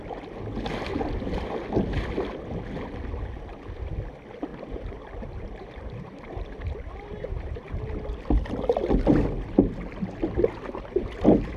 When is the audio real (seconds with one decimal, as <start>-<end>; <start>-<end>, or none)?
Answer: 0.0-4.5; 6.2-7.1; 7.9-11.6